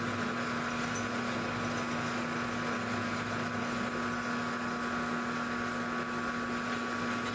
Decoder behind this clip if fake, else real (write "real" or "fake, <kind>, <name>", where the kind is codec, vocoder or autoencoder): real